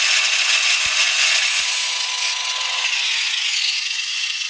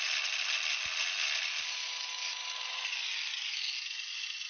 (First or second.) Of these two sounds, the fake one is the first